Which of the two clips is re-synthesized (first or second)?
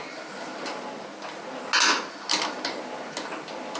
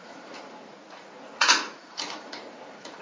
second